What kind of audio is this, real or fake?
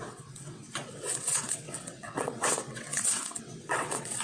fake